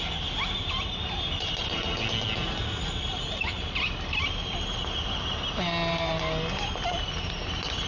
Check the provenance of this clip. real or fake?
real